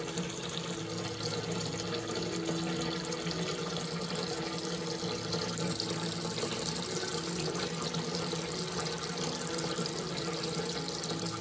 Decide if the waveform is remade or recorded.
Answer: recorded